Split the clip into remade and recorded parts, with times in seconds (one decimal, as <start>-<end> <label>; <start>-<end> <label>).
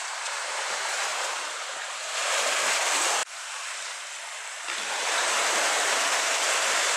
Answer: 0.0-3.2 remade; 3.2-5.0 recorded; 5.0-7.0 remade